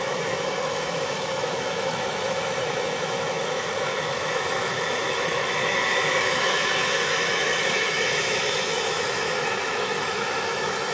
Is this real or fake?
fake